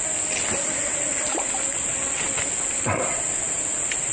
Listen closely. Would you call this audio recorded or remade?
recorded